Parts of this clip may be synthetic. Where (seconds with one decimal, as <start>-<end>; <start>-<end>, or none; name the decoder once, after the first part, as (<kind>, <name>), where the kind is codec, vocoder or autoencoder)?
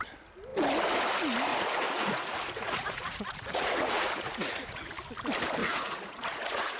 1.5-4.9 (vocoder, Vocos); 5.6-6.8